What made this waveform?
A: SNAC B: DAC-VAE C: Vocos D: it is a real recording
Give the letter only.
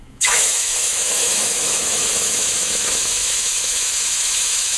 B